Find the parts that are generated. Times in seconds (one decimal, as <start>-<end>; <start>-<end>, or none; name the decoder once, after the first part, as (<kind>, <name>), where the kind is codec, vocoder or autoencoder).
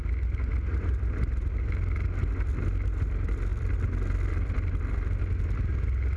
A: 3.5-5.2 (vocoder, BigVGAN v2)